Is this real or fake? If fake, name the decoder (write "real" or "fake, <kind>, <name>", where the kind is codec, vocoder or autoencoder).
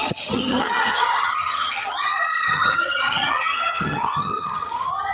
fake, vocoder, HiFi-GAN